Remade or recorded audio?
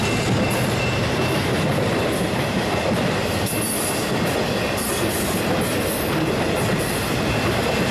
recorded